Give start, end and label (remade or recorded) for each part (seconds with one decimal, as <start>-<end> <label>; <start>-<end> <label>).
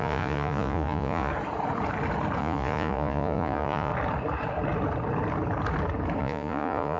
0.0-1.3 remade; 1.3-2.4 recorded; 2.4-3.9 remade; 3.9-6.2 recorded; 6.2-7.0 remade